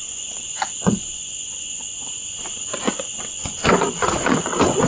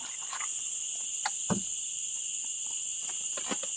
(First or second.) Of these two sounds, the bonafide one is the second